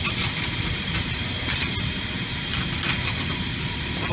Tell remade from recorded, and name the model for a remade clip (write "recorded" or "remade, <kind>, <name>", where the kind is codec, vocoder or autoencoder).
recorded